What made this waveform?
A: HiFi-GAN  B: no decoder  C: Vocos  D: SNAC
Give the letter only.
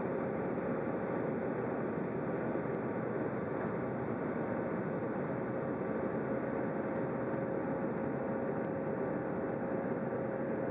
B